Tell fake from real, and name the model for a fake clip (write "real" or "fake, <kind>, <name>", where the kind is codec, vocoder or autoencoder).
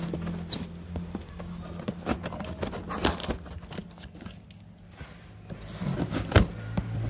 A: real